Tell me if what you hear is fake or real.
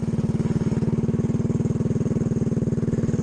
real